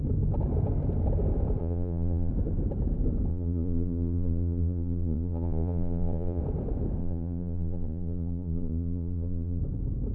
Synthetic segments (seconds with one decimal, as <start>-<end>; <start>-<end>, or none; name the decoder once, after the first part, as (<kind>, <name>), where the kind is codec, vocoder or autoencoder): 1.6-2.3 (vocoder, Vocos); 3.3-6.4; 7.0-9.6